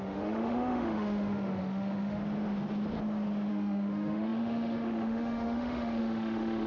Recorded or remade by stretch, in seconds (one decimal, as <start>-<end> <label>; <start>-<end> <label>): 0.0-2.2 remade; 2.2-3.5 recorded; 3.5-6.7 remade

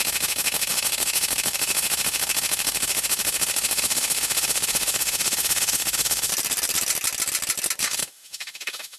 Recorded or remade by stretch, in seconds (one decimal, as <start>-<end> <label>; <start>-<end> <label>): 0.0-6.3 remade; 6.3-7.8 recorded; 7.8-9.0 remade

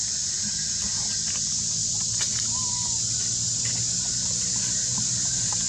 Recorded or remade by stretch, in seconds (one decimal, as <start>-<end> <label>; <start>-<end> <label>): 0.0-5.7 recorded

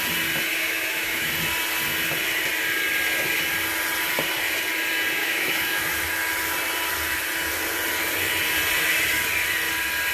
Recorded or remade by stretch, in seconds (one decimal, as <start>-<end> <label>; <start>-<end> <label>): 0.0-0.5 recorded; 0.5-1.3 remade; 1.3-5.2 recorded; 5.2-5.8 remade; 5.8-10.1 recorded